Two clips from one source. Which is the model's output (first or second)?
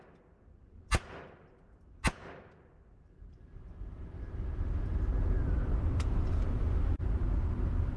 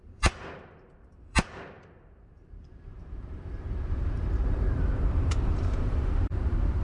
second